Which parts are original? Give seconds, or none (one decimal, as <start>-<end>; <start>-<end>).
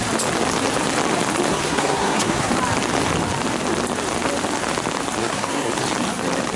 0.0-1.5; 2.5-5.2; 5.7-6.6